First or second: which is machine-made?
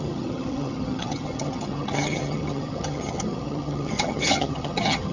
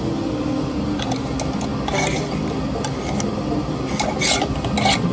first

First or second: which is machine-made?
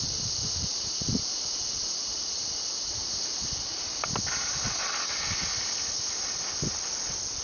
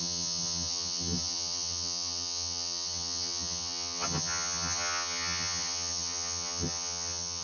second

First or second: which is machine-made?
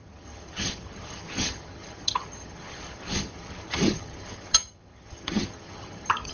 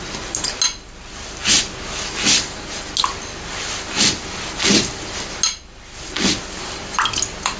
first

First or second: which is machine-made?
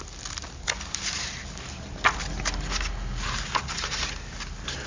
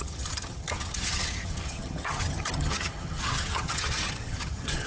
second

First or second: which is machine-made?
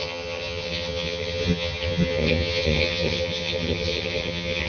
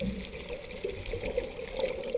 first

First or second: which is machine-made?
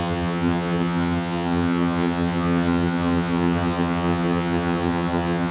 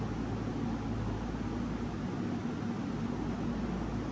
first